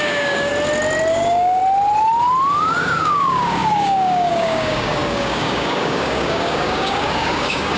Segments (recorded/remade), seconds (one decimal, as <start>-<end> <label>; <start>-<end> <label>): 0.0-0.5 remade; 0.5-1.1 recorded; 1.1-1.6 remade; 1.6-2.6 recorded; 2.6-7.8 remade